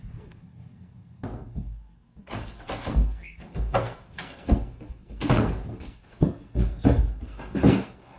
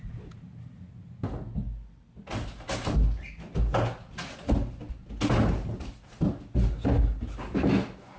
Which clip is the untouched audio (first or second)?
second